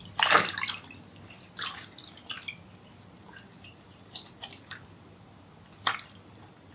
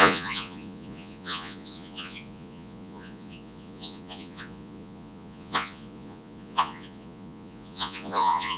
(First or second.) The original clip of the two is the first